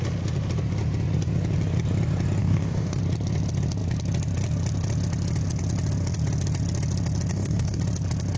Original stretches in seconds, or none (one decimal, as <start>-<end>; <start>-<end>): 0.0-2.4; 3.0-7.3; 7.8-8.4